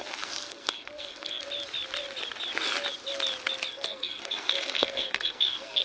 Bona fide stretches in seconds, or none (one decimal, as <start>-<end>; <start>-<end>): 1.4-3.7